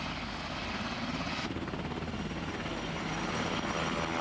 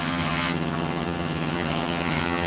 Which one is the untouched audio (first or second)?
first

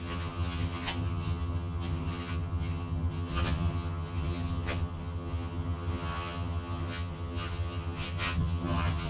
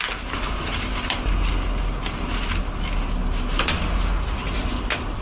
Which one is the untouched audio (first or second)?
second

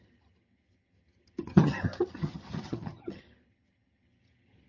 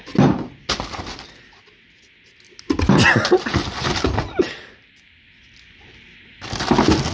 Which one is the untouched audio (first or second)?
second